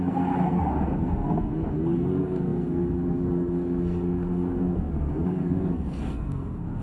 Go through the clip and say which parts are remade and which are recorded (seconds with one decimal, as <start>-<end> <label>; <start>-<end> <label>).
0.0-6.8 remade